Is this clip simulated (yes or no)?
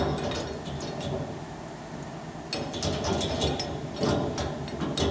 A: no